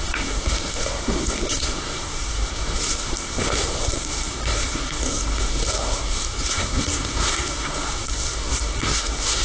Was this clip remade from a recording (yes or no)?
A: yes